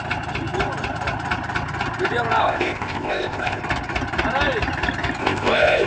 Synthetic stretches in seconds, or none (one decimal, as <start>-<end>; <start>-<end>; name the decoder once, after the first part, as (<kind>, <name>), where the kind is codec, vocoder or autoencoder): 2.4-3.6 (codec, ZipCodec); 5.2-5.9